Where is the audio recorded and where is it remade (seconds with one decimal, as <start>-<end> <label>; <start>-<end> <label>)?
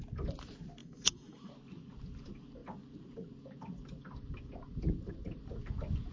0.0-0.8 recorded; 0.8-1.5 remade; 1.5-6.1 recorded